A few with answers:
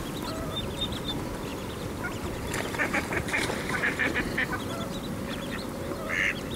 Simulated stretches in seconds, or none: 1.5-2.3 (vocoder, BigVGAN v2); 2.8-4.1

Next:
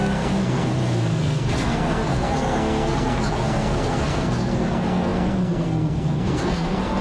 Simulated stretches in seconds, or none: 0.0-7.0 (codec, SNAC)

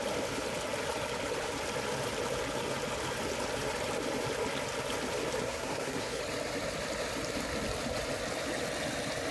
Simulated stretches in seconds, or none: 5.4-6.2 (codec, SNAC)

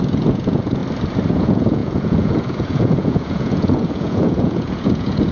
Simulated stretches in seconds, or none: 0.0-0.8 (vocoder, Vocos); 1.3-5.3

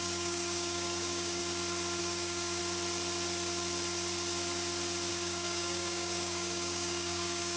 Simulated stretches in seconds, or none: 0.0-1.4 (codec, DAC); 2.0-2.6; 5.1-7.6

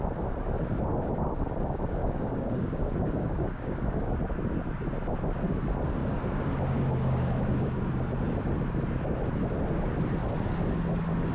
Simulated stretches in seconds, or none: 2.0-4.2 (codec, DAC); 6.0-7.8

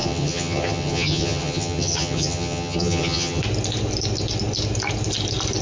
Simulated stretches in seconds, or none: 0.0-3.4 (vocoder, HiFi-GAN)